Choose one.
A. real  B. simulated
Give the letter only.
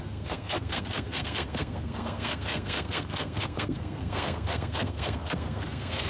B